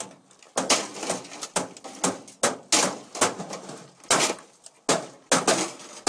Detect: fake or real real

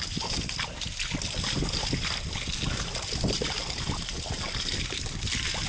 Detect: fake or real real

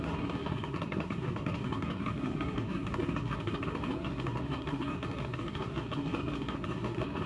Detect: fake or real fake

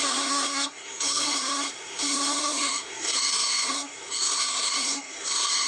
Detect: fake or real fake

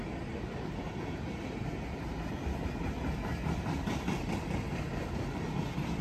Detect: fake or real real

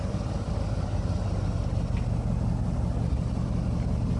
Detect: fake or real real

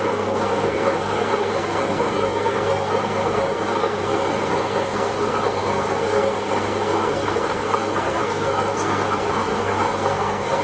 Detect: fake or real fake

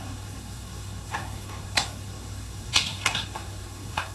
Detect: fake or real fake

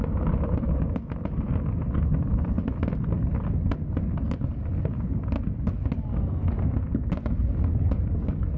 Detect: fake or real real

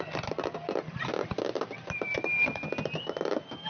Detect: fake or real real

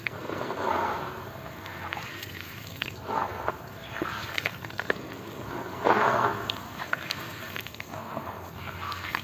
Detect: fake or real fake